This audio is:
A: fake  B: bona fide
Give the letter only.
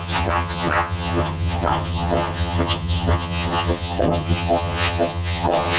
A